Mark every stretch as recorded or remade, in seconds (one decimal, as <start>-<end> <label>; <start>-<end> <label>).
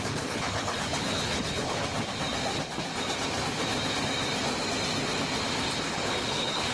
0.0-1.8 remade; 1.8-5.8 recorded; 5.8-6.7 remade